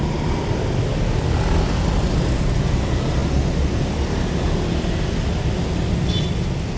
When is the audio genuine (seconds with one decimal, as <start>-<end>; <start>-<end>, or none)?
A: 0.0-6.8